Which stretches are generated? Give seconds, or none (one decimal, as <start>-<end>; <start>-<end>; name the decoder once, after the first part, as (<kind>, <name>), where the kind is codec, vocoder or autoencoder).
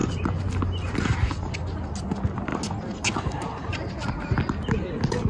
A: none